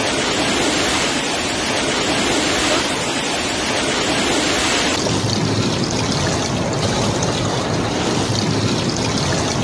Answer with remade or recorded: recorded